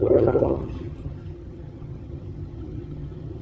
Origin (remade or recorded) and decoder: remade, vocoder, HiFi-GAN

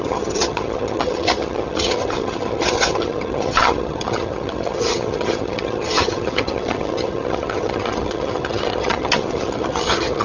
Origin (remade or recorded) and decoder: remade, vocoder, HiFi-GAN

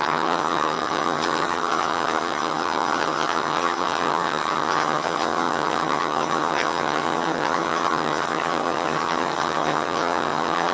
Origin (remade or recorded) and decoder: remade, vocoder, HiFi-GAN